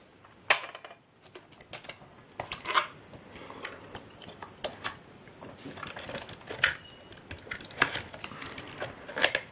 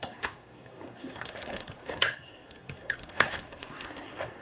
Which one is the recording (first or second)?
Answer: first